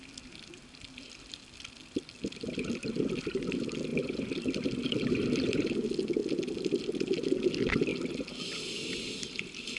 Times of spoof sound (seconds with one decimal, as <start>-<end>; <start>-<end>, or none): 3.9-5.7; 6.2-7.1